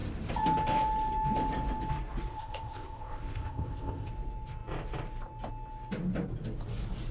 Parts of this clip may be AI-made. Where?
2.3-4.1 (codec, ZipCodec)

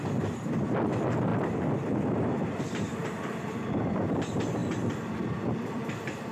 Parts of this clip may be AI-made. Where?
0.0-6.3 (vocoder, BigVGAN v2)